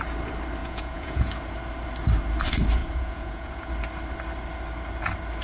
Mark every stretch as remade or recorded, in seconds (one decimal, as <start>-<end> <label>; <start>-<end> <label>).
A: 0.0-0.6 recorded; 0.6-1.3 remade; 1.3-2.8 recorded; 2.8-3.7 remade; 3.7-5.4 recorded